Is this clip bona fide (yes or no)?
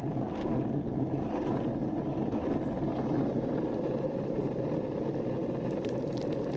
yes